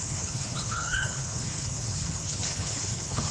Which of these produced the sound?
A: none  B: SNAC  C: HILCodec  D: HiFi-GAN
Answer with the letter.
C